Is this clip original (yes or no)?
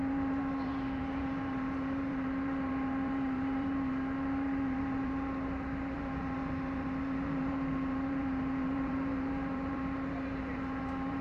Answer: no